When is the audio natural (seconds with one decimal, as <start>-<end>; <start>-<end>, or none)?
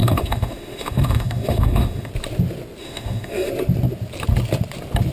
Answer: 2.1-2.8; 3.5-5.1